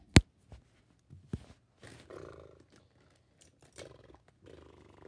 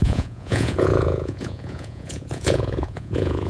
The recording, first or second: first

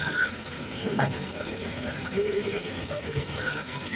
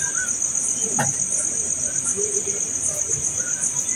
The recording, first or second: second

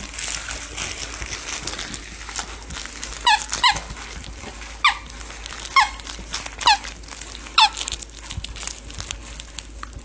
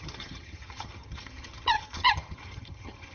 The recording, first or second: first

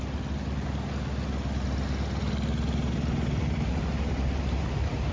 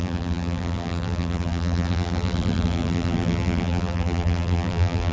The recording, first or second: first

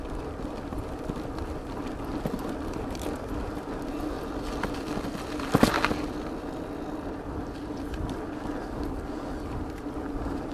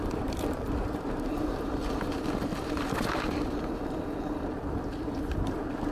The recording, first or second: first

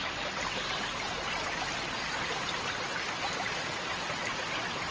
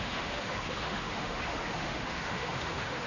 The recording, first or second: first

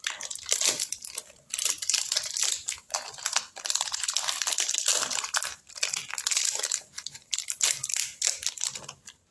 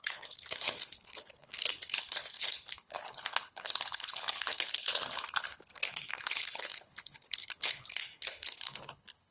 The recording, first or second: first